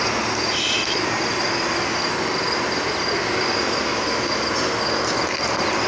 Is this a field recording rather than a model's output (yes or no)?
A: yes